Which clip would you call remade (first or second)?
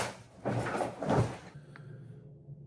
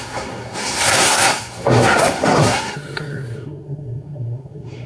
second